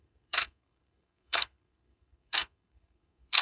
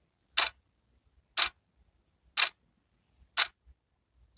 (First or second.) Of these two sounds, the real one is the second